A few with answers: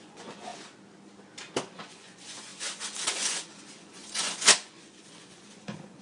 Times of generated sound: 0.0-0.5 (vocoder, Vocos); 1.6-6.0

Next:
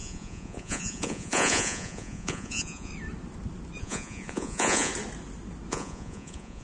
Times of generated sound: 0.0-2.9 (vocoder, Vocos); 3.8-4.9; 5.7-6.6